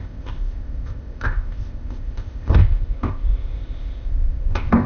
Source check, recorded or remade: remade